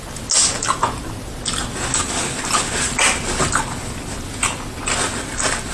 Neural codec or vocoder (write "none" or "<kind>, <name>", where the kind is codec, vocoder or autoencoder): none